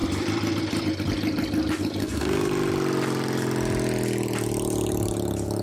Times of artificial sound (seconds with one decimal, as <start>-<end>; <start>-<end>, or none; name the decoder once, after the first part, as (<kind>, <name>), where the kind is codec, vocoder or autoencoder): 2.0-2.5 (codec, SNAC)